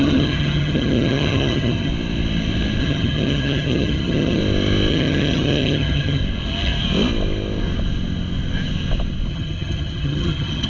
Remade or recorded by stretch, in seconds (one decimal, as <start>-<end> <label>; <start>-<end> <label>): 0.0-1.9 remade; 1.9-2.8 recorded; 2.8-4.4 remade; 4.4-4.9 recorded; 4.9-6.2 remade; 6.2-9.3 recorded; 9.3-10.7 remade